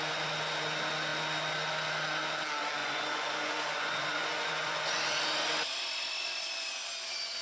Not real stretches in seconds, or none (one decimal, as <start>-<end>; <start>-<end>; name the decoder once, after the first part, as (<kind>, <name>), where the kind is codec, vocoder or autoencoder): 2.8-5.2 (vocoder, Vocos)